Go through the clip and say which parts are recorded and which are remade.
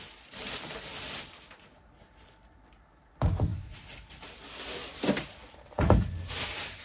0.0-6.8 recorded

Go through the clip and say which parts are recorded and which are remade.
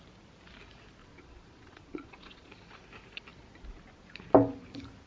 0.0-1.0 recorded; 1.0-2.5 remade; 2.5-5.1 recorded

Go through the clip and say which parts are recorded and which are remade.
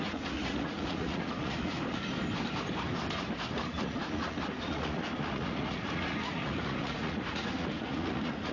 0.0-1.8 remade; 1.8-3.6 recorded; 3.6-8.5 remade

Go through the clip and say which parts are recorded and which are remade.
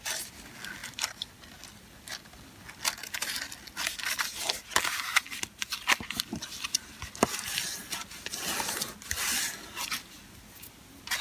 0.0-11.2 recorded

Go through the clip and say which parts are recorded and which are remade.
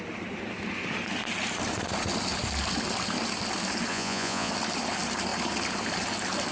0.0-3.9 recorded; 3.9-4.5 remade; 4.5-6.5 recorded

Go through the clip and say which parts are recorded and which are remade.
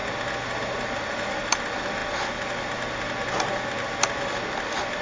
0.0-5.0 recorded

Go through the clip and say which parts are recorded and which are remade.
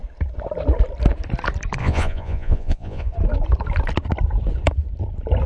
0.0-1.8 recorded; 1.8-3.1 remade; 3.1-5.5 recorded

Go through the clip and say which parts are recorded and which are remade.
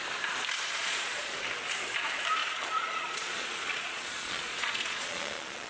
0.0-0.7 recorded; 0.7-1.4 remade; 1.4-2.4 recorded; 2.4-5.7 remade